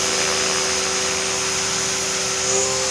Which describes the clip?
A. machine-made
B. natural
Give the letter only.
B